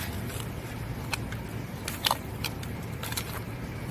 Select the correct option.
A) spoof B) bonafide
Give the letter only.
B